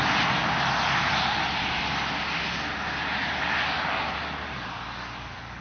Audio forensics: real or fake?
real